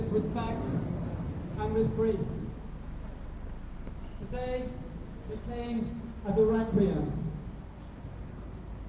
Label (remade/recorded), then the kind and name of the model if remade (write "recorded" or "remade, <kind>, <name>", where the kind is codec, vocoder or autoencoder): recorded